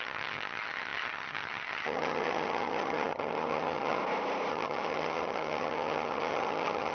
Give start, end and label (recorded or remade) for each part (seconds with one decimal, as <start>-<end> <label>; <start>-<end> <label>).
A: 0.0-4.0 remade; 4.0-4.5 recorded; 4.5-6.9 remade